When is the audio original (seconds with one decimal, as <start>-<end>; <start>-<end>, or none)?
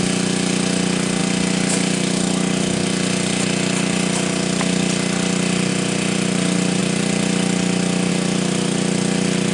0.0-9.5